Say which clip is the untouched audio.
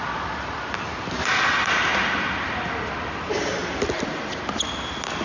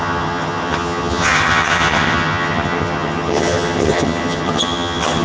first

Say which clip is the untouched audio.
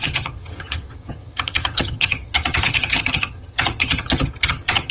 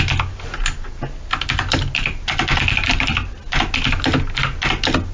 second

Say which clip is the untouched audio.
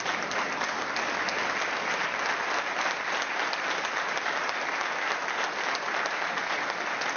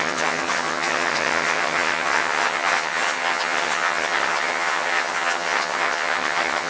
first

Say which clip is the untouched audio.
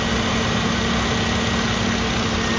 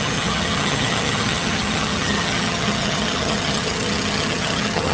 first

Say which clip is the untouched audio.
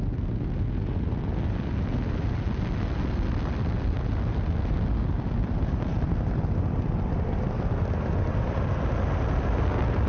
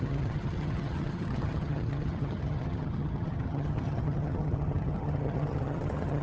first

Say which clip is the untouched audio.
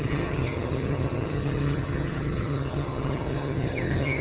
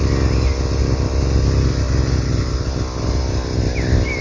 second